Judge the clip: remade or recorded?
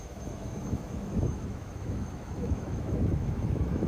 remade